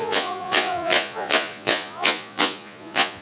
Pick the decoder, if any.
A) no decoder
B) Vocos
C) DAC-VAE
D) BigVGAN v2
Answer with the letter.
B